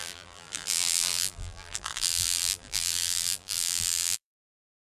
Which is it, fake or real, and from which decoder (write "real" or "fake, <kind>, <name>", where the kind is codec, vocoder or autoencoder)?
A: fake, vocoder, BigVGAN v2